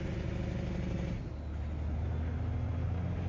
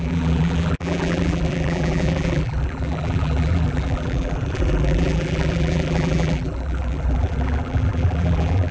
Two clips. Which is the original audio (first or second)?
first